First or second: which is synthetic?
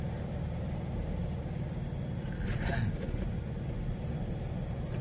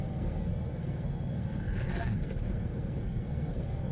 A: second